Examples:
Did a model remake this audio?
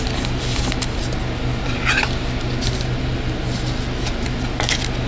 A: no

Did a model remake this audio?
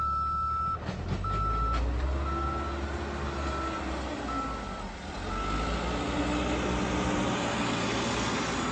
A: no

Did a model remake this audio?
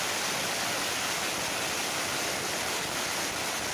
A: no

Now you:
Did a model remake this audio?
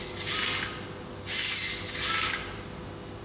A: no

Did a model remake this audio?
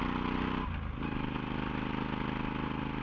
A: no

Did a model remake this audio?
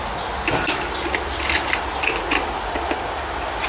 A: no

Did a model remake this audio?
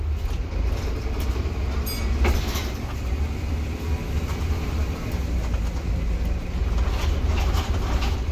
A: no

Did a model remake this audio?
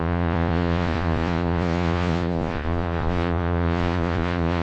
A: yes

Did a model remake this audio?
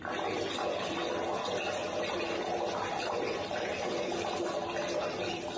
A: no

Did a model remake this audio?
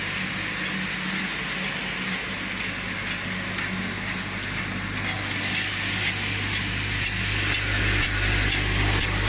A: no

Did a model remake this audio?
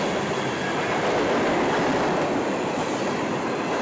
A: yes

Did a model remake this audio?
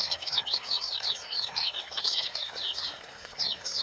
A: yes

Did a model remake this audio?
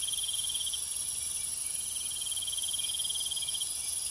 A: no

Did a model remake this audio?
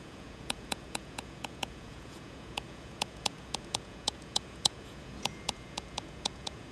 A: yes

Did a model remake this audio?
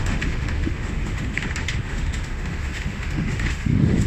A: yes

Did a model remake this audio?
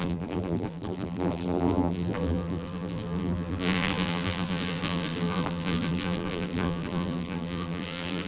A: yes